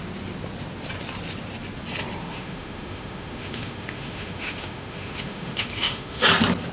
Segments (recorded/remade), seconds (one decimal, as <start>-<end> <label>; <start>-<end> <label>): 0.0-2.2 recorded; 2.2-6.2 remade; 6.2-6.7 recorded